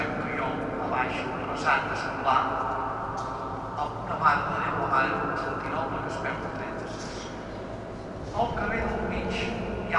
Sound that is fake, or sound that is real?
real